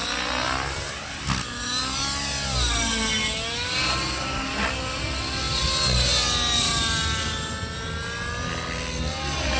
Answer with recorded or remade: recorded